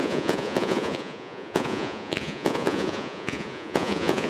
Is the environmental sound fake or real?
fake